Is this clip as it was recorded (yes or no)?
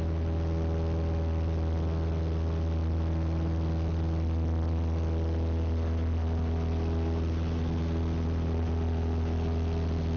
yes